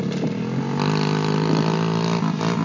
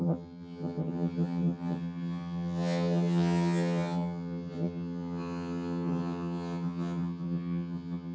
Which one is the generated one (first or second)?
second